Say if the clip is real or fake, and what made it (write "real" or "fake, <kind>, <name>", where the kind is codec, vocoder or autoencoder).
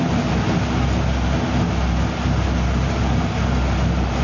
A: real